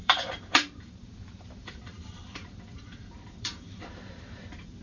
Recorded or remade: remade